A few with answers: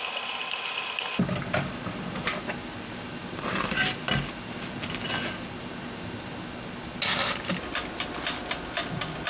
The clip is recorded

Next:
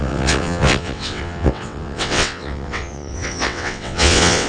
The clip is remade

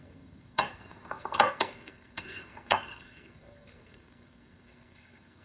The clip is remade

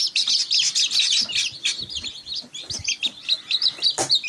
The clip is recorded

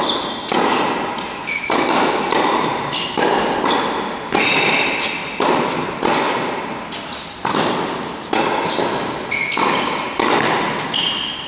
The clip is recorded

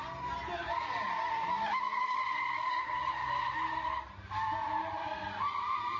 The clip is recorded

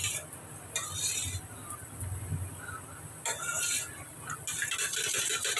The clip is recorded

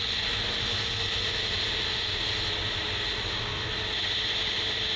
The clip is recorded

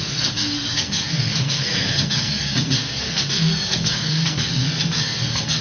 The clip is remade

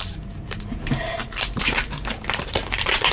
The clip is remade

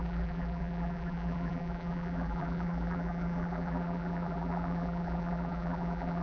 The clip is remade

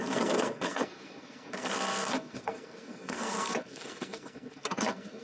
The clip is remade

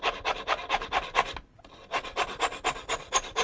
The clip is recorded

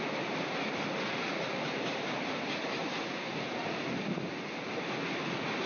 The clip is recorded